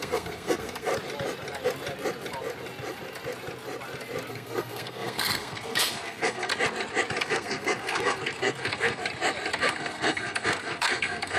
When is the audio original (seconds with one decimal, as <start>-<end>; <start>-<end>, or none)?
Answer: 0.9-4.3; 6.5-7.2; 9.0-9.6